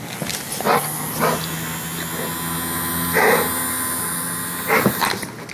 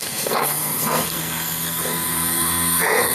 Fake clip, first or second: second